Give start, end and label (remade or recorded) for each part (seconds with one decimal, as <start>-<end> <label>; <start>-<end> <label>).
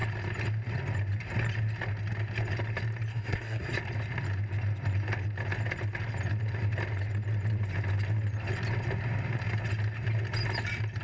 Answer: 0.0-3.1 recorded; 3.1-3.7 remade; 3.7-11.0 recorded